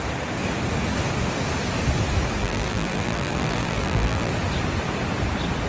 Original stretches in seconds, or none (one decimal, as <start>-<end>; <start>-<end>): 0.0-2.4; 4.3-5.7